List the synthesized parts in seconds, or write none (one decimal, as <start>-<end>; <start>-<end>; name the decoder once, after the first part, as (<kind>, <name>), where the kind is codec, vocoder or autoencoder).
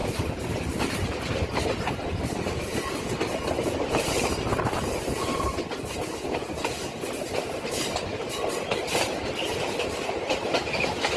0.0-11.2 (vocoder, BigVGAN v2)